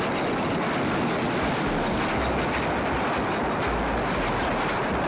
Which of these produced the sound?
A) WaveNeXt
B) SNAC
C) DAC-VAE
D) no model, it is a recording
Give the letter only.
D